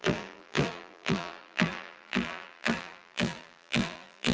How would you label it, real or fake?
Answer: fake